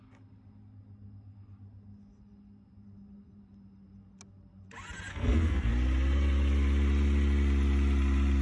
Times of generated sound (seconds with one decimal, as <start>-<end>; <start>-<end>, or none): 5.1-5.7